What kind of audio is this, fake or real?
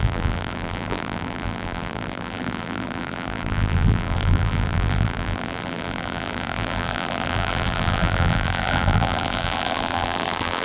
fake